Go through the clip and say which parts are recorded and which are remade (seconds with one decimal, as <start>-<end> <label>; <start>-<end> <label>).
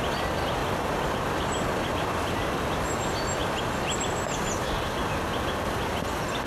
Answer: 0.0-0.6 recorded; 0.6-2.2 remade; 2.2-3.4 recorded; 3.4-4.7 remade; 4.7-6.5 recorded